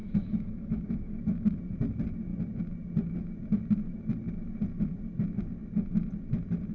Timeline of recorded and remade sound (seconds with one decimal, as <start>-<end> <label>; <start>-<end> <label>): 0.0-1.6 remade; 1.6-6.7 recorded